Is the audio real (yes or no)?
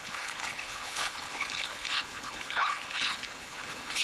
no